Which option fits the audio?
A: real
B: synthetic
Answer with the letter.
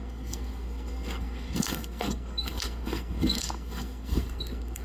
B